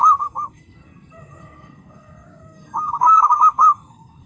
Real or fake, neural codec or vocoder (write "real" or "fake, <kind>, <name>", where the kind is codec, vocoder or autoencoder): fake, codec, SNAC